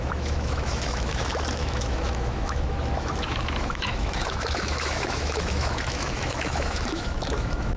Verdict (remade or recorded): remade